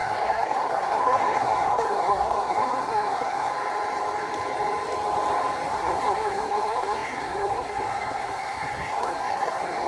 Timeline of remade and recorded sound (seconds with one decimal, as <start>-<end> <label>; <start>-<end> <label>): 0.0-3.5 remade; 3.5-5.7 recorded; 5.7-9.9 remade